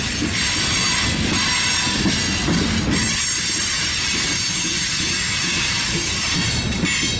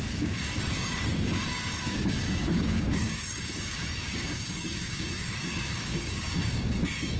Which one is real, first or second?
first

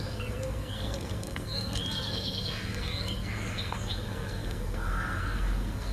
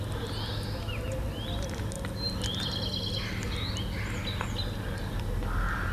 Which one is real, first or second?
second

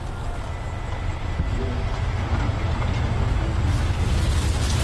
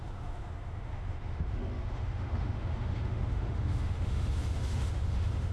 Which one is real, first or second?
first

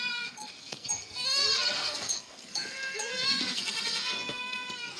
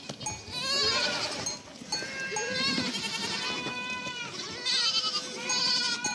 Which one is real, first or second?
second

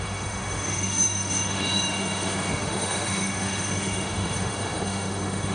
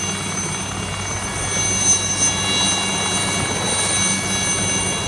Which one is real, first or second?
second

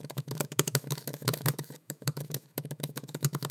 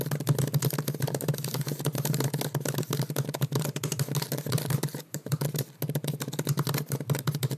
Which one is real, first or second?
second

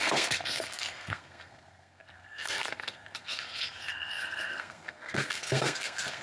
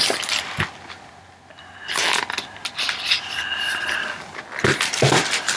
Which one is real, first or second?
second